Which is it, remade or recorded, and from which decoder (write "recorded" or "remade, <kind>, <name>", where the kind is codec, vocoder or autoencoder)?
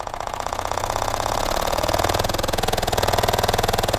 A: remade, vocoder, Vocos